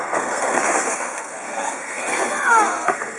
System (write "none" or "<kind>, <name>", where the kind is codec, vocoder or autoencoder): codec, SNAC